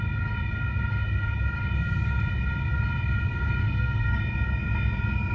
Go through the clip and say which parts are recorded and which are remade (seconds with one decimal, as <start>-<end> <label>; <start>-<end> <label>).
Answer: 0.0-3.6 recorded; 3.6-4.2 remade; 4.2-5.3 recorded